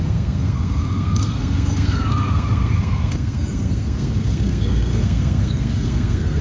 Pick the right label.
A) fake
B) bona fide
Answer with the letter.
A